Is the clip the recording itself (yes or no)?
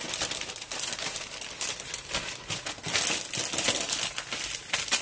yes